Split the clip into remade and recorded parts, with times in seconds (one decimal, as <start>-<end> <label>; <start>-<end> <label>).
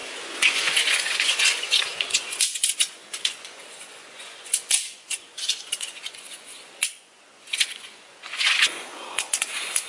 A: 0.0-9.9 remade